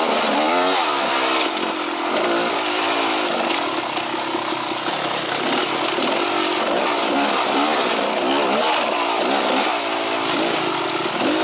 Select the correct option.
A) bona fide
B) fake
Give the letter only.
A